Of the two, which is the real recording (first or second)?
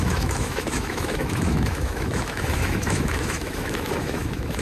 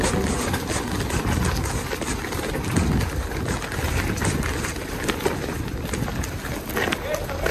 second